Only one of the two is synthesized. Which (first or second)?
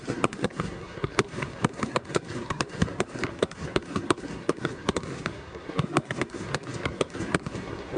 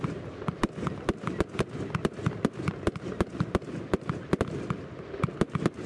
first